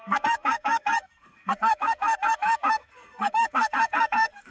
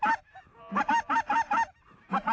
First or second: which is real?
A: second